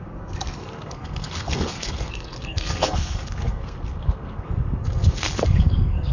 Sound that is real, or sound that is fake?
fake